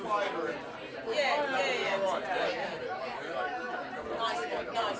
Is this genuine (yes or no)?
yes